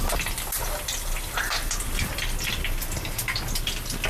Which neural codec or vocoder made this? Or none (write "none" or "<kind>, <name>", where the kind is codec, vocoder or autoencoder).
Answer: none